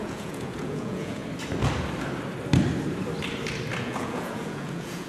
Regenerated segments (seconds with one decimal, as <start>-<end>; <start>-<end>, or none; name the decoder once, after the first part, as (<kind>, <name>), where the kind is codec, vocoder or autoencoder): 0.0-1.2 (vocoder, Vocos); 3.8-5.1